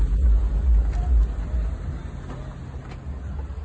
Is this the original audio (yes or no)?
yes